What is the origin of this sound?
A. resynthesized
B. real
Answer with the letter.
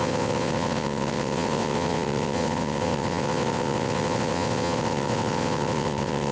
A